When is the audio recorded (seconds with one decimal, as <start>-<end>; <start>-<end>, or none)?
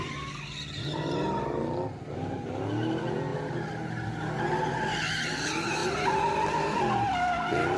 0.0-7.8